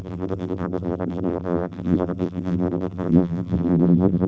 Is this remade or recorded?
remade